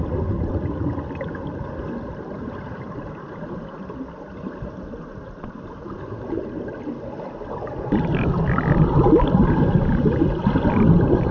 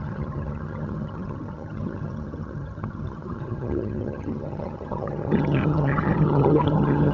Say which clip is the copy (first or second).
second